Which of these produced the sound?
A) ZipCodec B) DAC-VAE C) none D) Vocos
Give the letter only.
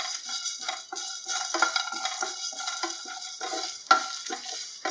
C